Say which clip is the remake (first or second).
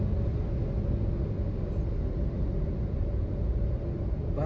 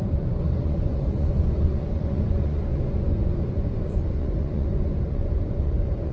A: second